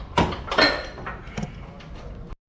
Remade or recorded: recorded